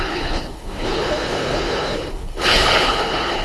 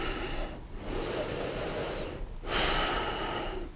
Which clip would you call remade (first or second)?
first